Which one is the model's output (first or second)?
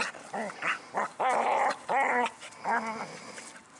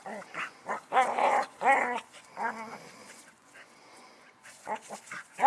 second